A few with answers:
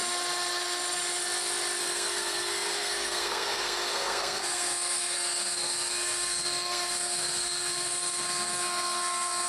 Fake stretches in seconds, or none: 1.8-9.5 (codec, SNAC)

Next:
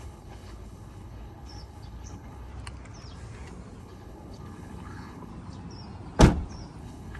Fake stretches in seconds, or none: 0.0-2.5 (codec, HILCodec); 3.8-5.3; 6.8-7.2

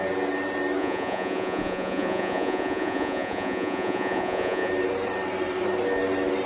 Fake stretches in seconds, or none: 0.8-4.7 (vocoder, Vocos)

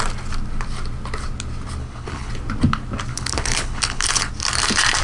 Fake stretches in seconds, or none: 1.8-2.3 (codec, HILCodec); 3.1-4.3

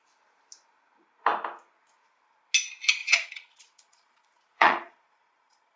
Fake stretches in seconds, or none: 3.0-5.8 (vocoder, Vocos)

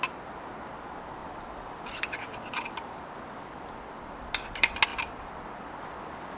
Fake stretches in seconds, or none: 1.2-2.7 (vocoder, BigVGAN v2); 4.9-5.8